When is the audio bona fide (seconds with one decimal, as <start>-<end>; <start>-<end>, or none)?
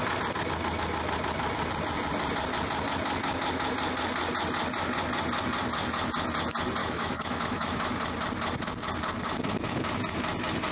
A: 0.0-6.8; 7.8-10.7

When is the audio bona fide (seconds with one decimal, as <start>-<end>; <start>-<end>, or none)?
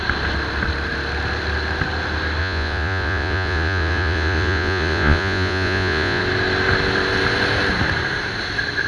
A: 0.0-2.4; 6.2-8.9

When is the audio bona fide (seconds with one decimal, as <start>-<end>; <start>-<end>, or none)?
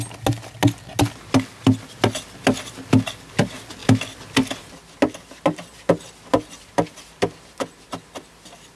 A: 0.0-8.8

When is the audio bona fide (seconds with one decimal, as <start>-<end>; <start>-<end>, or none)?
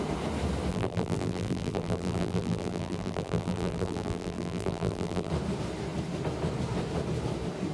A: 0.0-0.7; 5.3-7.7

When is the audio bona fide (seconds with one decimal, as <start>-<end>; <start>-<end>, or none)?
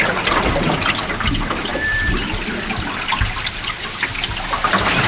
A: 0.0-5.1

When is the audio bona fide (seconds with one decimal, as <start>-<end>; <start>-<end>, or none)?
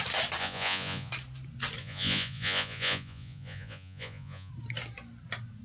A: 0.0-0.4; 1.1-1.8; 4.5-5.6